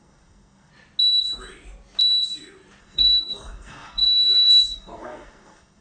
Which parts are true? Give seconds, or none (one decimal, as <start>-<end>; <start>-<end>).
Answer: 0.7-2.8